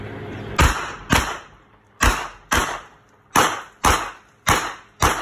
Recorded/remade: recorded